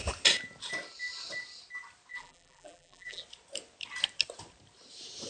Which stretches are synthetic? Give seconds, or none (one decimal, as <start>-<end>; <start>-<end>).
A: 2.1-3.2